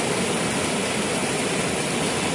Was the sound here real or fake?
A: real